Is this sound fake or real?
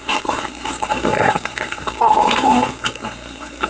fake